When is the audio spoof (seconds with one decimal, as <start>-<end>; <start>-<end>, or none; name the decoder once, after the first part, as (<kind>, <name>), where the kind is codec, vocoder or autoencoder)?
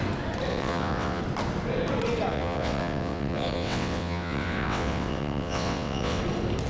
0.5-1.2 (vocoder, WaveNeXt); 2.3-6.2